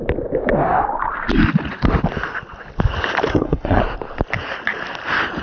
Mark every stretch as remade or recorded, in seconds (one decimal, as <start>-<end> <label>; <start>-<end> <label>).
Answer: 0.0-3.3 recorded; 3.3-3.8 remade; 3.8-5.4 recorded